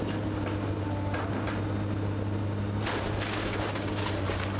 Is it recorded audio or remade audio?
recorded